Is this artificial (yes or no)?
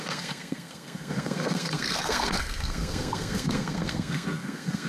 yes